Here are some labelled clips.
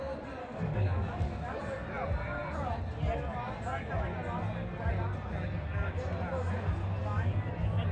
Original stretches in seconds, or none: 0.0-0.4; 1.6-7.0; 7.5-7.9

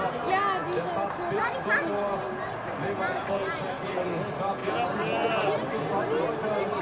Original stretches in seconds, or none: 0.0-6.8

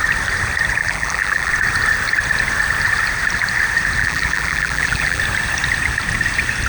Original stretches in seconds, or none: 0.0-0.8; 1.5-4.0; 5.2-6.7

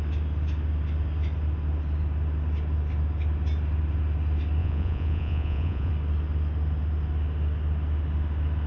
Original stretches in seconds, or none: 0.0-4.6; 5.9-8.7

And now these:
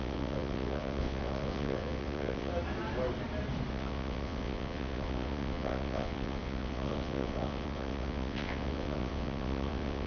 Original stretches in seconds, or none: 2.5-3.7

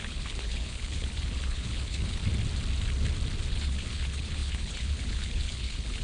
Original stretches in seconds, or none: 2.2-3.5

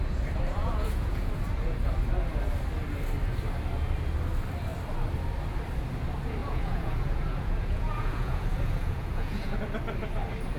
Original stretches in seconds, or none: 0.0-0.6; 1.3-6.4; 9.6-10.6

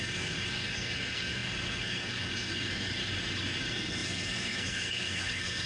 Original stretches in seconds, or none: 3.0-3.6